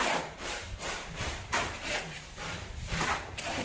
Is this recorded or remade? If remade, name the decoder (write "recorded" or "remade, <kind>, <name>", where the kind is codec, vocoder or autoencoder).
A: remade, vocoder, BigVGAN v2